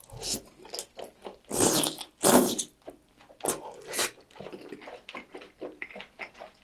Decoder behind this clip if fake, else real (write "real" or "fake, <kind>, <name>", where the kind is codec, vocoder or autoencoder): real